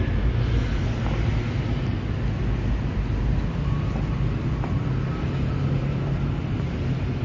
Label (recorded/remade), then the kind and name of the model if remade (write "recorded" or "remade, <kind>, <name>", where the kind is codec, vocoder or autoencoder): recorded